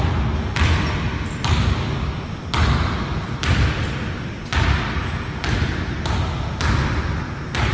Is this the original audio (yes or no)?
yes